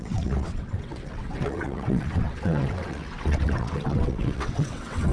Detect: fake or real fake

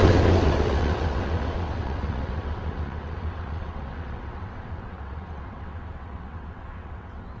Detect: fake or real fake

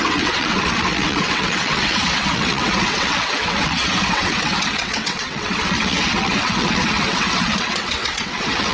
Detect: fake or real fake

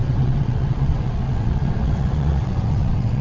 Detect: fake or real fake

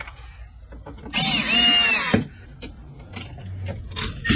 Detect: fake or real real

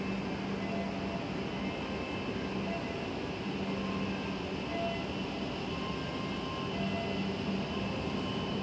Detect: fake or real real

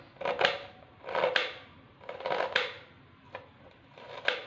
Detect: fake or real real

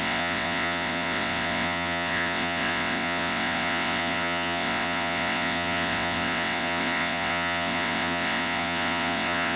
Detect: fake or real fake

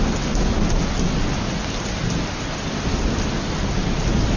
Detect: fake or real real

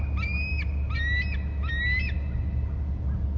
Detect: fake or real real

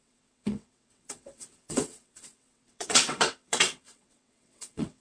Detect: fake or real fake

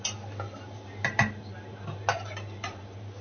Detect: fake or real real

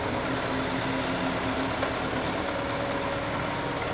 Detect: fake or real real